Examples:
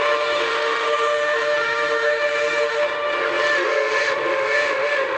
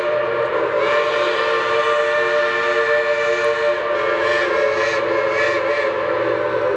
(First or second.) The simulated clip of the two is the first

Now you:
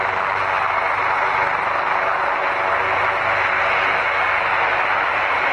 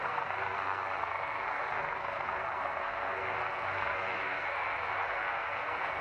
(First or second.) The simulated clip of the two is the second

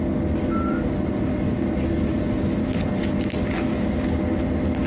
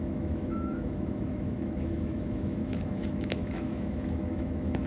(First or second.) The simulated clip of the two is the second